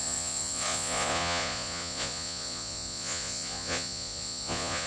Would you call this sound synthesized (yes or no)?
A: yes